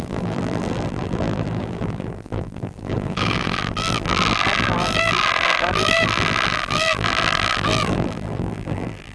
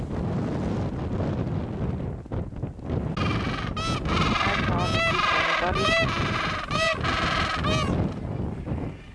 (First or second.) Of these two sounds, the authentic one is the second